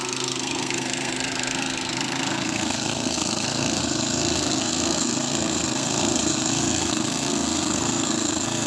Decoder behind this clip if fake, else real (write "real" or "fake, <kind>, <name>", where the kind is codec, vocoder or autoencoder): fake, codec, SNAC